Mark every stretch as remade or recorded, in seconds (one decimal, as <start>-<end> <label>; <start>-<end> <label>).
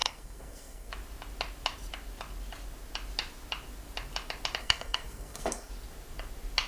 0.0-0.9 remade; 0.9-4.6 recorded; 4.6-5.7 remade; 5.7-6.7 recorded